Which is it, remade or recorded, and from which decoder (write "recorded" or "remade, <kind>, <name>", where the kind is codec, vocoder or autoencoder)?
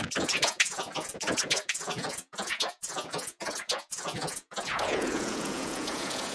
remade, vocoder, Vocos